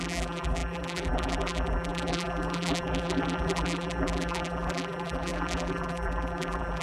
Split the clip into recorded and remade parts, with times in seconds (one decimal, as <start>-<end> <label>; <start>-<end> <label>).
0.0-6.8 remade